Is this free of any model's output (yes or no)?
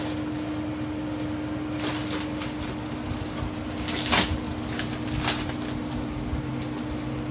yes